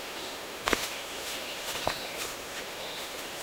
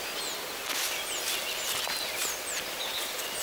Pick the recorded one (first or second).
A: second